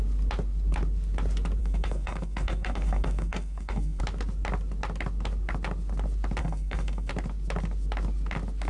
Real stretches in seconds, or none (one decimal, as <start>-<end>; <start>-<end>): 0.0-1.6; 4.0-6.4; 7.1-8.7